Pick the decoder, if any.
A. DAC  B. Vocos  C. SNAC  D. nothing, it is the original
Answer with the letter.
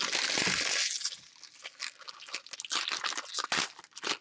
D